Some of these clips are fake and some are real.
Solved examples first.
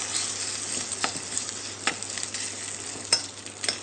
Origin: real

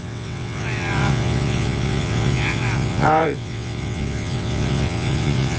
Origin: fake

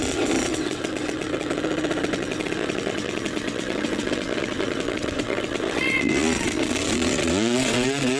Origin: fake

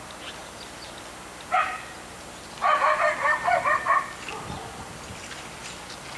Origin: real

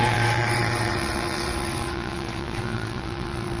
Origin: fake